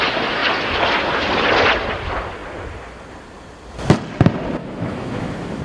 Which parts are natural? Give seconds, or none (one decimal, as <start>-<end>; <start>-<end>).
0.0-4.6